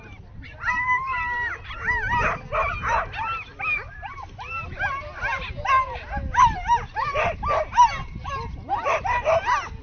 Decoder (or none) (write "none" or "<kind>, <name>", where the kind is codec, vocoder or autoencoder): none